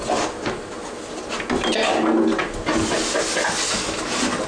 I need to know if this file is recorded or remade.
recorded